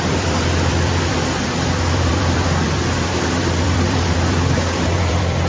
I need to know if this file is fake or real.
fake